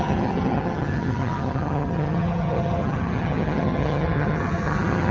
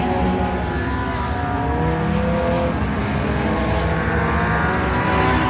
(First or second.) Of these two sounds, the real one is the second